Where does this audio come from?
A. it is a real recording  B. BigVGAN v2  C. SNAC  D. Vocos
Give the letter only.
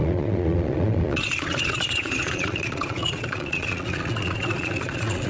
D